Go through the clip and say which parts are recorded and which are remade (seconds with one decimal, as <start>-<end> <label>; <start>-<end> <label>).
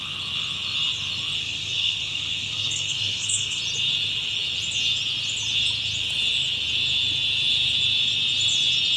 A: 0.0-1.4 recorded; 1.4-3.6 remade; 3.6-9.0 recorded